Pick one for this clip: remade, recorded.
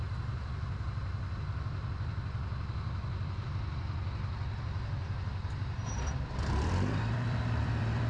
remade